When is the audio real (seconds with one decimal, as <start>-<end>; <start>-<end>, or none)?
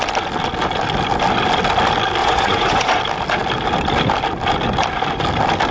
0.0-2.2; 3.0-5.7